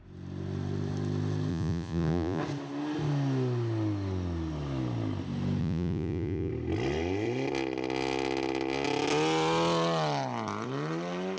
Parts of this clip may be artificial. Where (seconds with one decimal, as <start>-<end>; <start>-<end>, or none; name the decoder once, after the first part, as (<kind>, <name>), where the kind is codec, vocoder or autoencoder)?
1.5-2.4 (vocoder, Vocos); 5.6-6.5